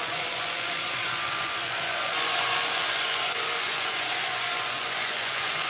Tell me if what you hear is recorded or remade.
remade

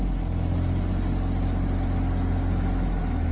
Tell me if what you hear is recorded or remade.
recorded